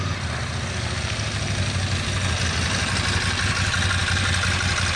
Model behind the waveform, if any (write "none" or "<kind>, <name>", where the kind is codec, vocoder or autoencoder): none